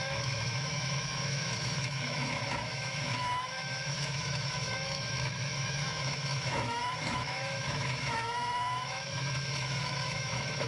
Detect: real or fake fake